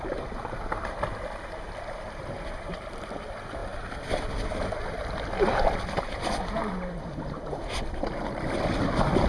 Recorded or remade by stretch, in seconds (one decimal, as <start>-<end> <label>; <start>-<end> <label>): 0.0-9.3 recorded